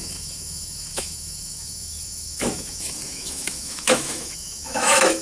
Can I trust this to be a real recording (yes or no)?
no